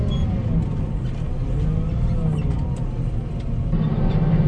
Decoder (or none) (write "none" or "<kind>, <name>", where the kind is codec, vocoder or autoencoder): none